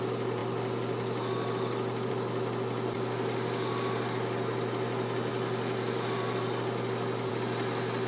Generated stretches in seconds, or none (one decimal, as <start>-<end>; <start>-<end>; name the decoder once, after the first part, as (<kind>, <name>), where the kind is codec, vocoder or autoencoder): none